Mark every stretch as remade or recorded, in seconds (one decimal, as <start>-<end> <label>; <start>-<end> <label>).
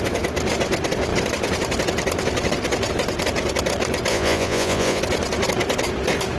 0.0-4.1 recorded; 4.1-5.0 remade; 5.0-6.4 recorded